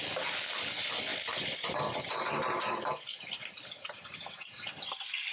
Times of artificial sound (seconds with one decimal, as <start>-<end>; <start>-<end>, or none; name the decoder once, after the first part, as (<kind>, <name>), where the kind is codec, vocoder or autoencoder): none

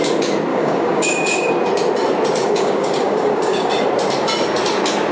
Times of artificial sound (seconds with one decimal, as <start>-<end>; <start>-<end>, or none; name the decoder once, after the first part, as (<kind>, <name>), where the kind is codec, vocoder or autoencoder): 0.5-1.5 (codec, DAC); 2.4-3.7

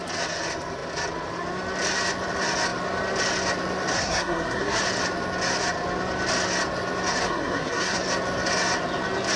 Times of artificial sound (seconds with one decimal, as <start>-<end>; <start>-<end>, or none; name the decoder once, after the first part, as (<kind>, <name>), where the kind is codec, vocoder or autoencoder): 3.9-4.8 (codec, SNAC); 7.2-8.0

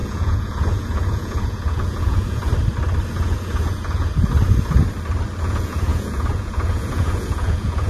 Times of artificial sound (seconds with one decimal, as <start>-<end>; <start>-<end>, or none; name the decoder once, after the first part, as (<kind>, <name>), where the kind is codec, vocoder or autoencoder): 0.0-2.5 (vocoder, Vocos); 3.1-4.1; 5.4-7.9

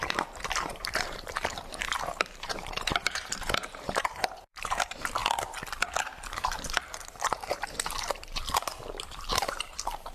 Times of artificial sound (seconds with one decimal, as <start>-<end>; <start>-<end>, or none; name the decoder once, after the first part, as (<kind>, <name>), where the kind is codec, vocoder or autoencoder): 0.0-5.2 (vocoder, BigVGAN v2); 6.3-10.1